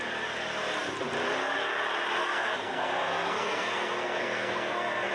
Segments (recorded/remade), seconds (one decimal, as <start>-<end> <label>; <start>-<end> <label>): 0.0-2.2 recorded; 2.2-5.1 remade

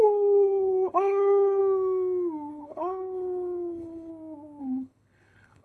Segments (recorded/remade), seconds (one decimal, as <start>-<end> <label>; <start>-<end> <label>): 0.0-1.6 remade; 1.6-2.5 recorded; 2.5-4.1 remade; 4.1-4.6 recorded; 4.6-5.6 remade

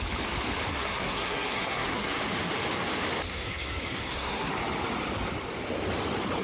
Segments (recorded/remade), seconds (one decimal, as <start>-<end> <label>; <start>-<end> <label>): 0.0-0.7 recorded; 0.7-2.2 remade; 2.2-3.3 recorded; 3.3-4.5 remade; 4.5-6.4 recorded

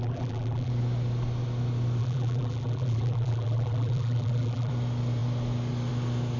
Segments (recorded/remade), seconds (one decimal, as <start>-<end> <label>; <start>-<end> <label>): 0.0-0.7 remade; 0.7-2.0 recorded; 2.0-4.7 remade; 4.7-6.4 recorded

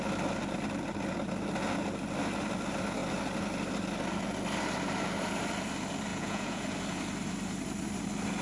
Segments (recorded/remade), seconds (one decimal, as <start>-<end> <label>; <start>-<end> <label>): 0.0-6.1 recorded; 6.1-6.6 remade; 6.6-8.4 recorded

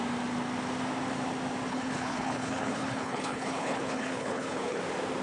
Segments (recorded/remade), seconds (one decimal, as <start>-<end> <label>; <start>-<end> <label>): 0.0-1.7 recorded; 1.7-4.8 remade; 4.8-5.2 recorded

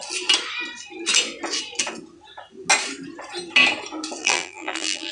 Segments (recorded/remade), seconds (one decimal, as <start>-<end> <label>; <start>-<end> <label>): 0.0-4.2 recorded; 4.2-5.1 remade

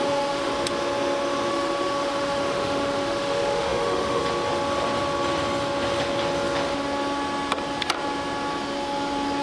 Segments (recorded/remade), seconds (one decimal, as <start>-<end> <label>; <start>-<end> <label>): 0.0-0.5 remade; 0.5-1.5 recorded; 1.5-4.2 remade; 4.2-9.4 recorded